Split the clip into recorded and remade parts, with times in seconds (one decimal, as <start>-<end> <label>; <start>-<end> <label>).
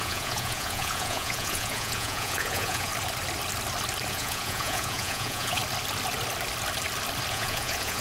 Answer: 0.0-2.9 remade; 2.9-4.1 recorded; 4.1-5.6 remade; 5.6-7.3 recorded; 7.3-8.0 remade